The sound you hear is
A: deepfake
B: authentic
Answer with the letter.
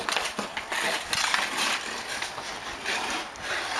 B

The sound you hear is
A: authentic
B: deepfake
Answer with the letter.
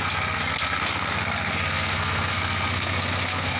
B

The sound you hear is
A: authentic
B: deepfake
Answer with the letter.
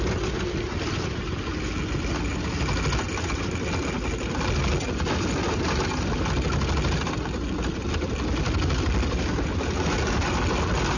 A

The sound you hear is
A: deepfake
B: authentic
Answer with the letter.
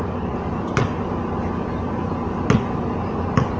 B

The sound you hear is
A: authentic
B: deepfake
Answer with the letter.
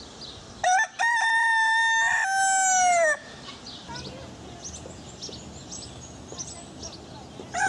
A